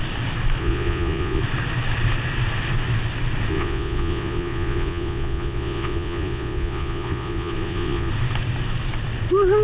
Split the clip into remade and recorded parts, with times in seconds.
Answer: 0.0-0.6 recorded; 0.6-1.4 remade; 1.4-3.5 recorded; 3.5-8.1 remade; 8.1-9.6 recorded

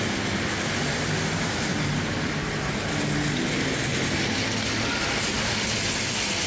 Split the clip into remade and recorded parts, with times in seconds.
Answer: 0.0-6.5 recorded